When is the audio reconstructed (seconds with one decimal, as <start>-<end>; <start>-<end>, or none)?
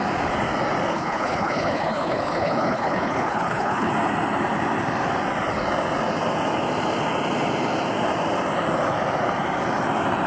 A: 0.9-3.9